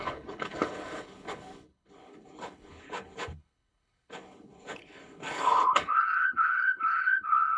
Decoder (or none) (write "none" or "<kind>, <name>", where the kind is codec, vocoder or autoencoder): codec, HILCodec